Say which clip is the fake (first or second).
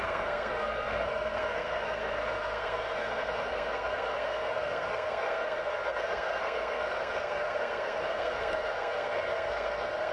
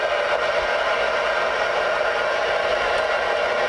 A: first